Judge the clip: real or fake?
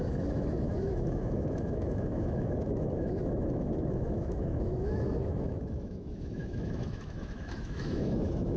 fake